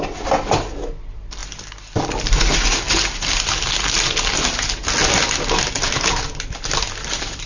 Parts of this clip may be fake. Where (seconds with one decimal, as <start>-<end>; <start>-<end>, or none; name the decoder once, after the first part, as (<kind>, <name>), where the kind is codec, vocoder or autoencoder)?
none